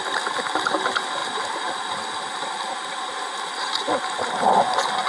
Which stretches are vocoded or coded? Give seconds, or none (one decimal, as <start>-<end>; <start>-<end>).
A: none